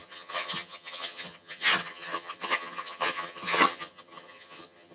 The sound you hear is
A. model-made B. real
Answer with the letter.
A